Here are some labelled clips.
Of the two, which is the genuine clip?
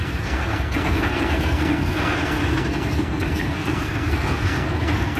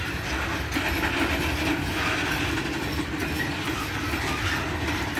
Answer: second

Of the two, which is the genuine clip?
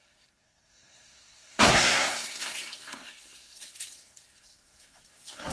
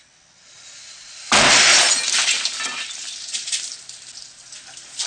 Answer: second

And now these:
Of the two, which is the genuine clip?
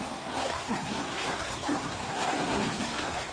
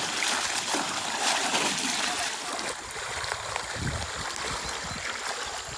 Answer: second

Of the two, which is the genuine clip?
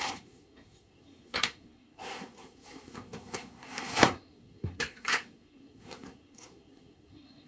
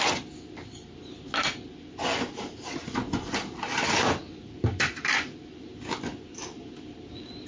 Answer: second